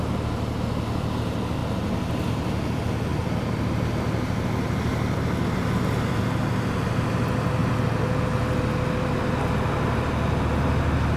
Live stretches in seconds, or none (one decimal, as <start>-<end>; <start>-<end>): 0.0-11.2